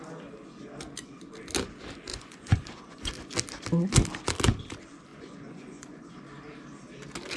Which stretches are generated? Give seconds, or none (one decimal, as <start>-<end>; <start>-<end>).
2.1-3.1; 5.1-6.2